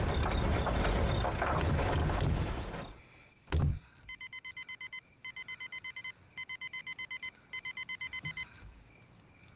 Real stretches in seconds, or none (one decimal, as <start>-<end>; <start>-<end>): 0.0-9.6